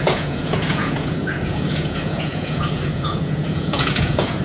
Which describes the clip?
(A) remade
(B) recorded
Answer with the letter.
A